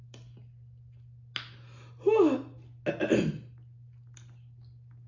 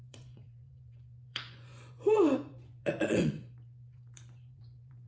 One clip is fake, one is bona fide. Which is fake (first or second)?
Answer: second